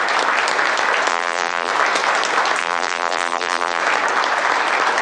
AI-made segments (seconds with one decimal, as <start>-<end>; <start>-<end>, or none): 1.1-1.7; 2.6-3.8